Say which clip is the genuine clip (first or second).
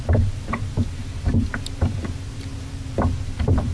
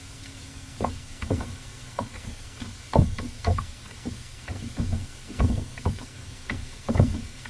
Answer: first